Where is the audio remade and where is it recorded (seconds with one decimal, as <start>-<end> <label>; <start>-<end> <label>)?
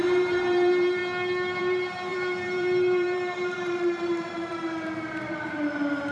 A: 0.0-1.0 remade; 1.0-1.6 recorded; 1.6-6.1 remade